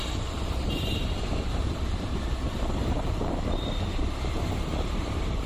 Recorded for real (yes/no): no